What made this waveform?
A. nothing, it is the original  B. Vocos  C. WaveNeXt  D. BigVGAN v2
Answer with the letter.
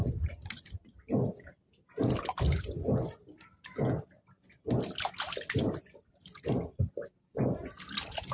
A